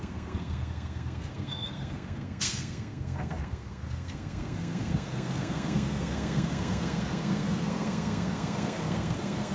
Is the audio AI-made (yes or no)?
yes